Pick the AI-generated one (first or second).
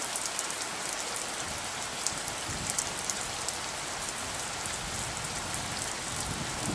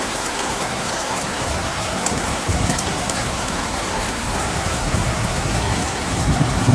second